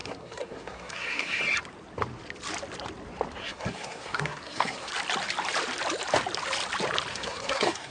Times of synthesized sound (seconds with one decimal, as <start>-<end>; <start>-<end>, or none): 0.0-1.4; 3.4-4.9; 7.1-7.9